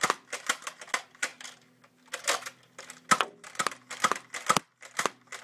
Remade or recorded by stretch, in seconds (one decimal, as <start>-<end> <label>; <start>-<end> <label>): 0.0-5.4 recorded